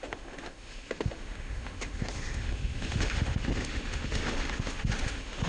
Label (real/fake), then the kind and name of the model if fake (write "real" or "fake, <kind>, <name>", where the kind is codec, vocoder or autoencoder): fake, autoencoder, DAC-VAE